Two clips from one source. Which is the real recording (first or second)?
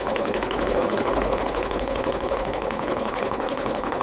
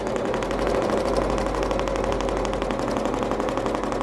second